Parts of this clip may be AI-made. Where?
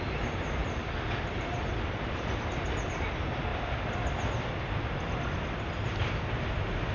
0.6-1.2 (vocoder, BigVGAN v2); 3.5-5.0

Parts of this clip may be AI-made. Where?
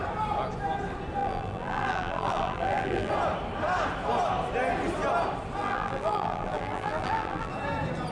1.2-3.1 (vocoder, BigVGAN v2); 5.6-7.5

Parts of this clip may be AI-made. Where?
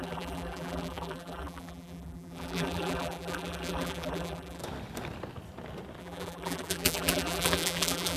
0.0-4.6 (vocoder, BigVGAN v2); 6.0-8.2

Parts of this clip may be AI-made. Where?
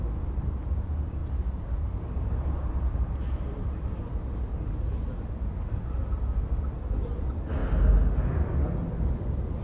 0.0-7.6 (vocoder, BigVGAN v2); 8.3-9.6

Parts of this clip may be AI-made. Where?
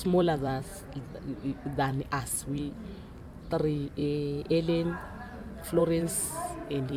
0.0-0.7 (vocoder, BigVGAN v2); 2.2-7.0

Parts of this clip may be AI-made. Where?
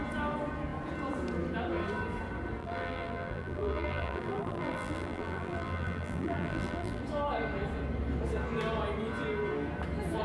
2.6-7.0 (vocoder, BigVGAN v2)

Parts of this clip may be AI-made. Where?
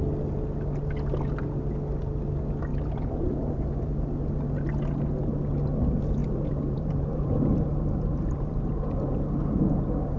2.7-3.9 (vocoder, BigVGAN v2); 6.2-9.2